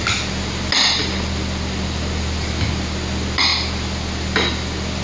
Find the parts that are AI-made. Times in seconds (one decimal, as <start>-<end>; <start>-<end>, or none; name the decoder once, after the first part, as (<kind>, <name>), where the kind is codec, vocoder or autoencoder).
none